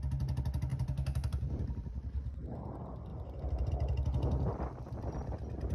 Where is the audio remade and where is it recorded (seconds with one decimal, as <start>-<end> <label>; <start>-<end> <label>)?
0.0-0.7 recorded; 0.7-2.0 remade; 2.0-3.1 recorded; 3.1-3.7 remade; 3.7-5.7 recorded